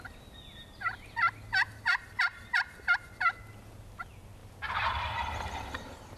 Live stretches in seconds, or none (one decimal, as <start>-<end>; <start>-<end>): 0.0-4.4